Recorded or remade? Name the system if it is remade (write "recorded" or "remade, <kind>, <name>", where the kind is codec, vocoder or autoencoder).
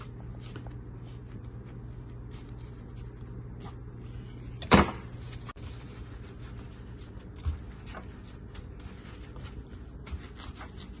recorded